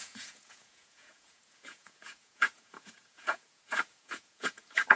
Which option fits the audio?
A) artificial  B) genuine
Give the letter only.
A